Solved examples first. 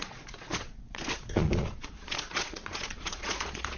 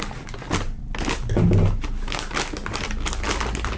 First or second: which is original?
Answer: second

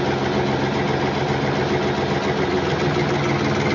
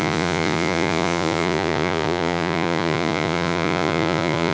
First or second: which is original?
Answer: first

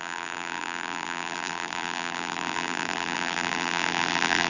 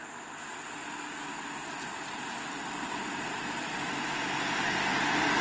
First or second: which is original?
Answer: second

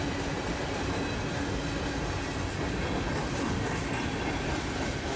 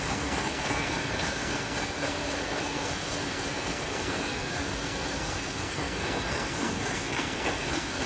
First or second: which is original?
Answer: first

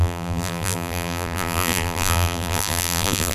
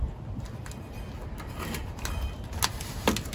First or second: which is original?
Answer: second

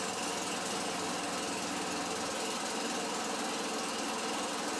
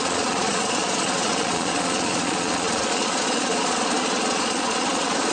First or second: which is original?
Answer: first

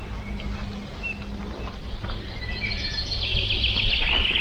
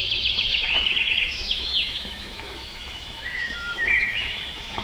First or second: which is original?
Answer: first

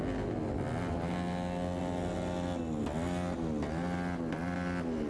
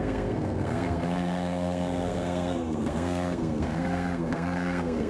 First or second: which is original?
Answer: first